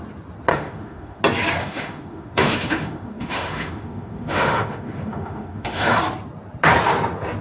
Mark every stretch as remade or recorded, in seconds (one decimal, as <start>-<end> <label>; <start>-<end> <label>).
0.0-0.5 recorded; 0.5-1.2 remade; 1.2-1.6 recorded; 1.6-6.0 remade; 6.0-7.4 recorded